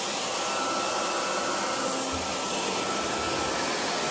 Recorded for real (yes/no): yes